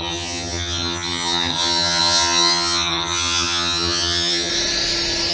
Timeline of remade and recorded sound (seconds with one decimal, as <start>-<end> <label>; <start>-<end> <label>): 0.0-4.5 remade; 4.5-5.3 recorded